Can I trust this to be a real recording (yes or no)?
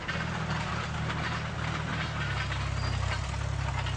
yes